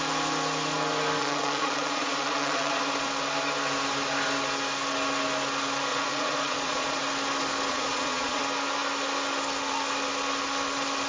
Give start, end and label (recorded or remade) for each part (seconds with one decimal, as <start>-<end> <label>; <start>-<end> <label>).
0.0-1.2 recorded; 1.2-2.8 remade; 2.8-5.9 recorded; 5.9-7.0 remade; 7.0-7.7 recorded; 7.7-8.4 remade; 8.4-11.1 recorded